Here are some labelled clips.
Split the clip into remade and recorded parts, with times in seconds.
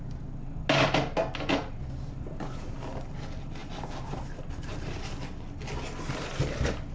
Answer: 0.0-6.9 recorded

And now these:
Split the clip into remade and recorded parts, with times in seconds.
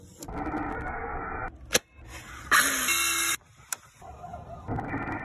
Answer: 0.0-0.7 recorded; 0.7-1.2 remade; 1.2-5.2 recorded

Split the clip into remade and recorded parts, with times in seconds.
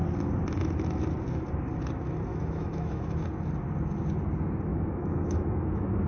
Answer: 0.0-2.3 recorded; 2.3-3.2 remade; 3.2-4.7 recorded; 4.7-6.1 remade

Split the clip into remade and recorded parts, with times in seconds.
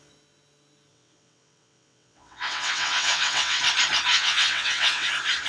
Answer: 0.0-0.9 recorded; 0.9-3.6 remade; 3.6-4.1 recorded; 4.1-5.1 remade; 5.1-5.5 recorded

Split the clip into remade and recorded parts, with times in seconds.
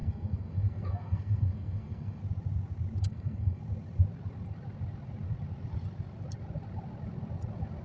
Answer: 0.0-2.2 remade; 2.2-3.1 recorded; 3.1-3.6 remade; 3.6-7.8 recorded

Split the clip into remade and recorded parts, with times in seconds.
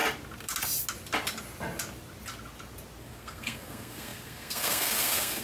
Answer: 0.0-3.0 recorded; 3.0-5.4 remade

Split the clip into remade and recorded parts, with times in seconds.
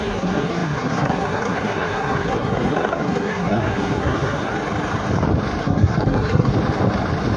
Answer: 0.0-4.5 remade; 4.5-5.6 recorded; 5.6-6.5 remade; 6.5-7.4 recorded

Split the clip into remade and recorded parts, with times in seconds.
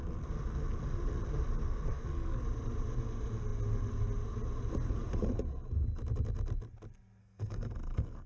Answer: 0.0-1.9 recorded; 1.9-2.4 remade; 2.4-7.2 recorded; 7.2-8.3 remade